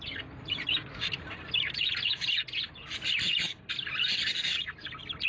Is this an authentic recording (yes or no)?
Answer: yes